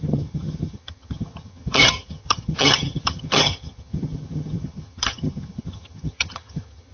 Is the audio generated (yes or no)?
yes